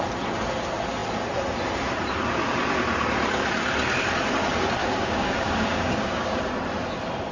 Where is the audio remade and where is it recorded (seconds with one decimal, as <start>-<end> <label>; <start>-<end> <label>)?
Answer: 0.0-4.8 recorded; 4.8-6.4 remade; 6.4-7.3 recorded